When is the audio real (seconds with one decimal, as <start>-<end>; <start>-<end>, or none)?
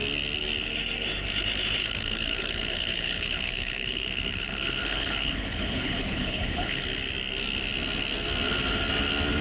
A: 0.0-1.8; 6.8-9.4